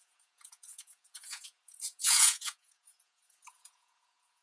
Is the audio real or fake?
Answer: fake